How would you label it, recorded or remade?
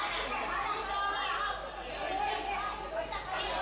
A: recorded